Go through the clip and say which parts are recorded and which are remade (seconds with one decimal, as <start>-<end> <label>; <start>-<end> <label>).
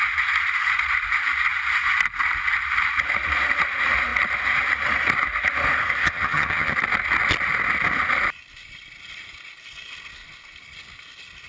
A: 0.0-6.0 recorded; 6.0-6.7 remade; 6.7-11.5 recorded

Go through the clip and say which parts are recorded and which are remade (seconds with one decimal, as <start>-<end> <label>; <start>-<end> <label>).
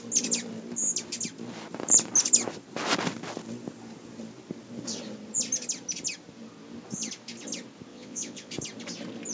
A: 0.0-7.9 recorded; 7.9-8.5 remade; 8.5-9.3 recorded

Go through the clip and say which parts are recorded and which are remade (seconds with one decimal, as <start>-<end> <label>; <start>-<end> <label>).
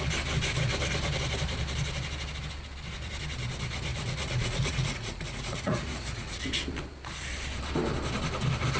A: 0.0-3.9 recorded; 3.9-6.4 remade; 6.4-8.8 recorded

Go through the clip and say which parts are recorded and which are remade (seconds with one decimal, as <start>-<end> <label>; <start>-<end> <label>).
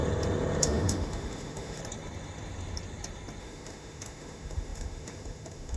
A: 0.0-0.6 recorded; 0.6-1.8 remade; 1.8-3.4 recorded; 3.4-5.8 remade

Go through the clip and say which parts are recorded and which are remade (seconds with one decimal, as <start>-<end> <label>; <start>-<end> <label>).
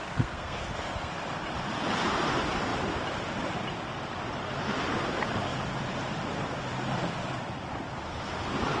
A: 0.0-1.1 remade; 1.1-8.8 recorded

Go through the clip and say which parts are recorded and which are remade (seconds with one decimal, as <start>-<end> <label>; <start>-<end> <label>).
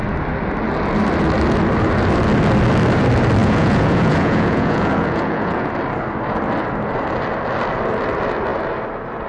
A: 0.0-3.4 recorded; 3.4-5.7 remade; 5.7-9.3 recorded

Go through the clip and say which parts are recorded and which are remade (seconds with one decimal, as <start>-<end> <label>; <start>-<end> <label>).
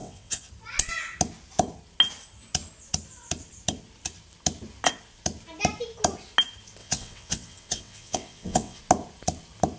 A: 0.0-0.5 remade; 0.5-6.8 recorded; 6.8-8.8 remade; 8.8-9.8 recorded